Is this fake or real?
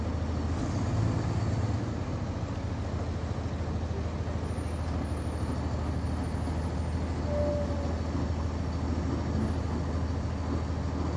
real